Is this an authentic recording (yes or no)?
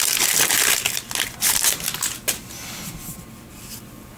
yes